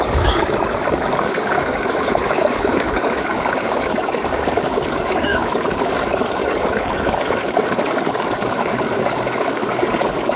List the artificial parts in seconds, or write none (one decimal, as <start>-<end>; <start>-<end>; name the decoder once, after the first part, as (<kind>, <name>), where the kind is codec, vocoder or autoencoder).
0.0-10.4 (codec, DAC)